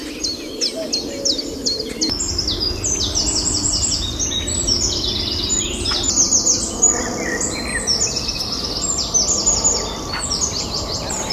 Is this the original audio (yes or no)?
yes